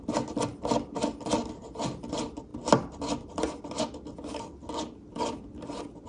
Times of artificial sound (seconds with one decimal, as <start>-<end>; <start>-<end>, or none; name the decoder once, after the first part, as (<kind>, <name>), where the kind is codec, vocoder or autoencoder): none